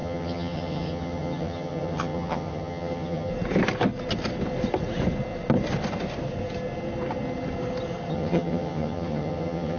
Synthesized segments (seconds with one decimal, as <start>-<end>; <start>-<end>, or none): 0.0-3.3; 8.1-9.8